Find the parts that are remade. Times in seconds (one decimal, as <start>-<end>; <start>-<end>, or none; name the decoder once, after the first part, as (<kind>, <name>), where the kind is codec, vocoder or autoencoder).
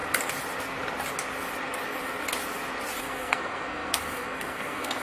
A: 3.0-5.0 (codec, SNAC)